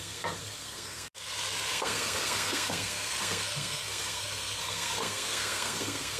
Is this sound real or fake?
fake